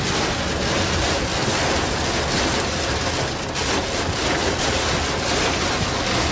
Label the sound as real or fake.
real